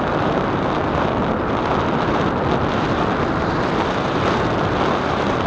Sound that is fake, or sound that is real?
real